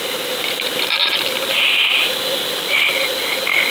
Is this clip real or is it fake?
real